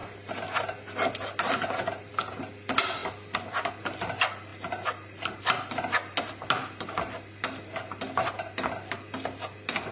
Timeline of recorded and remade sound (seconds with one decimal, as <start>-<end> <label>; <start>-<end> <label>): 0.0-9.9 recorded